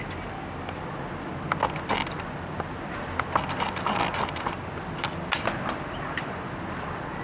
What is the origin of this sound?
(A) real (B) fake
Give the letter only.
A